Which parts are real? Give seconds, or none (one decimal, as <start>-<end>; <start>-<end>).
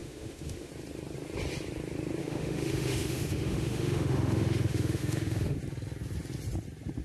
0.7-2.2; 5.6-7.0